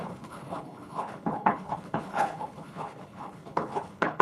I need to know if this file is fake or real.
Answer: fake